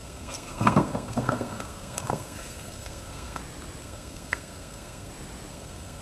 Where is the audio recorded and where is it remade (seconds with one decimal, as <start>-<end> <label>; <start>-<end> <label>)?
0.0-3.4 remade; 3.4-3.8 recorded; 3.8-5.1 remade; 5.1-5.5 recorded; 5.5-6.0 remade